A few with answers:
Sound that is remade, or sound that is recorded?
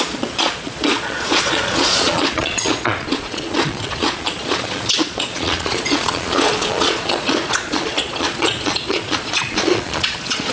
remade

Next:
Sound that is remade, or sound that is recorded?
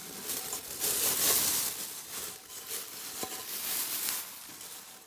recorded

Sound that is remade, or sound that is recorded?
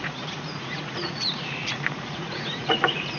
remade